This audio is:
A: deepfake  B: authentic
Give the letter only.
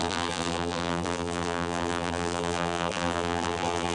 A